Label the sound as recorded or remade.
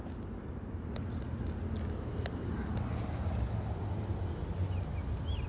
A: recorded